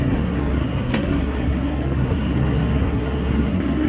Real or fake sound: fake